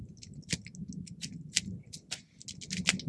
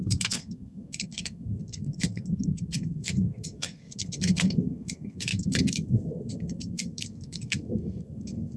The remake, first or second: second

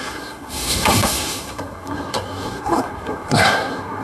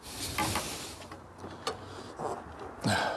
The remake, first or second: first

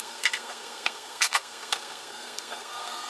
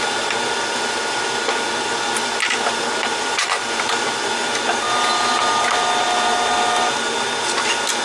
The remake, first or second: first